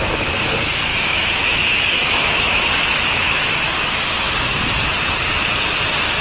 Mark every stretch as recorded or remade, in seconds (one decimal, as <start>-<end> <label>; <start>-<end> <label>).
0.0-0.9 recorded; 0.9-4.5 remade; 4.5-6.2 recorded